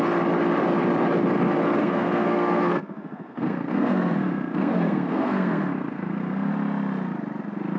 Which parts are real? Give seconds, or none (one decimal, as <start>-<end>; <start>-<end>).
0.0-1.8; 6.5-7.8